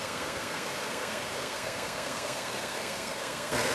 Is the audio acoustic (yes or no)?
no